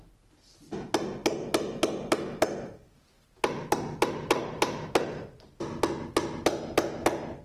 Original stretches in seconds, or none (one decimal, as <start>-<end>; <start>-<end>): 0.0-7.4